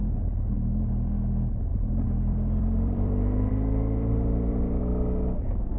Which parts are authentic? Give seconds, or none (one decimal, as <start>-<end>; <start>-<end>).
0.0-1.7; 3.5-5.8